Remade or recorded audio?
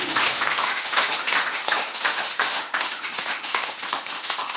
remade